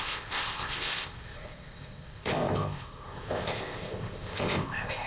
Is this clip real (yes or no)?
no